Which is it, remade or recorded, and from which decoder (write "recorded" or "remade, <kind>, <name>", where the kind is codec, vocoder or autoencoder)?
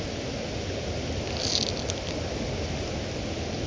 recorded